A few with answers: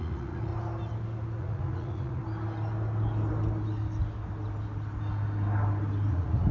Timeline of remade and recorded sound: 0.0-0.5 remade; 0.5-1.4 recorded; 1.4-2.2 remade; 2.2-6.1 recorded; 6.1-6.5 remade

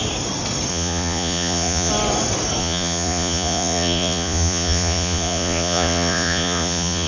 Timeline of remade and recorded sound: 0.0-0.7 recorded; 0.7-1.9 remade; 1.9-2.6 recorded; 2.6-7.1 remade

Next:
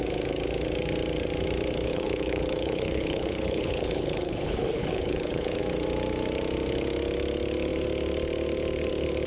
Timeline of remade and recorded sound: 0.0-1.9 recorded; 1.9-5.6 remade; 5.6-9.3 recorded

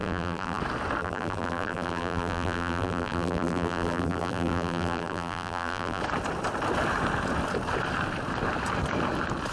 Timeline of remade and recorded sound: 0.0-0.6 remade; 0.6-1.0 recorded; 1.0-6.0 remade; 6.0-9.5 recorded